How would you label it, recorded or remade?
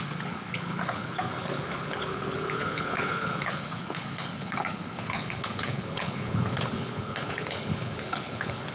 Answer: remade